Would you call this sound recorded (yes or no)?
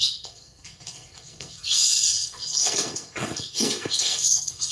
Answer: no